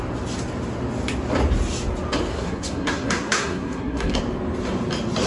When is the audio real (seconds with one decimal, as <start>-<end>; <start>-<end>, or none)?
0.0-2.3; 4.2-5.3